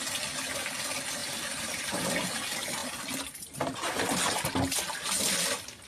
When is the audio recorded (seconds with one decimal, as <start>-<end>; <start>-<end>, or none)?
0.0-1.2; 2.0-5.9